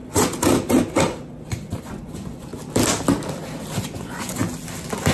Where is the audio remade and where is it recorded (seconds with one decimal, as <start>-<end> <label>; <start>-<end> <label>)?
0.0-1.8 recorded; 1.8-2.5 remade; 2.5-3.8 recorded; 3.8-4.4 remade; 4.4-5.1 recorded